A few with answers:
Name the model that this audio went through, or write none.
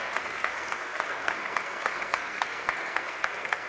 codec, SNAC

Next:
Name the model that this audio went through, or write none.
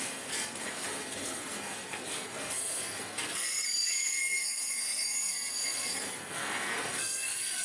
codec, SNAC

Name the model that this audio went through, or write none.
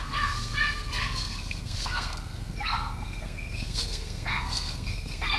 codec, SNAC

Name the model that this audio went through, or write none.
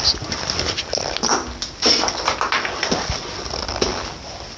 none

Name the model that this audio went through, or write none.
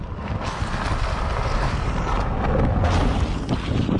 none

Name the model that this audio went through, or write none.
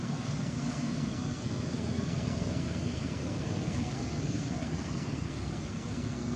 codec, SNAC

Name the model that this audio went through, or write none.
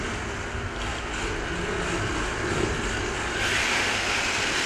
none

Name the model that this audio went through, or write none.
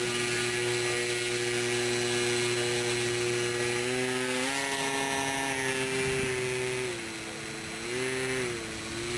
none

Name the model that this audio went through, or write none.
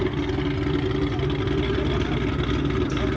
none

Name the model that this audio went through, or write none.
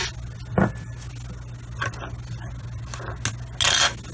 none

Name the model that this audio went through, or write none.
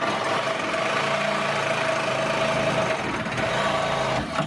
none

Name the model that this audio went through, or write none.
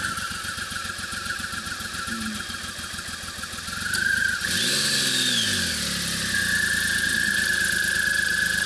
none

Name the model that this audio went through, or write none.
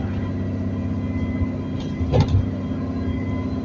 none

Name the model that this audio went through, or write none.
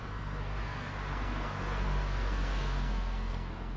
codec, SNAC